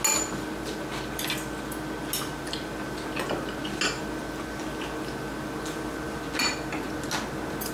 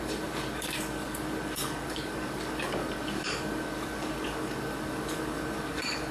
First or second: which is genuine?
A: first